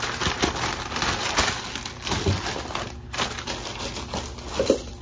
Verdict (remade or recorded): recorded